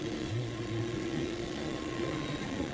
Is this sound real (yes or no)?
no